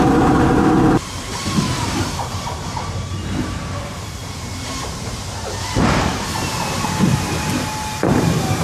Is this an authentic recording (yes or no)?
no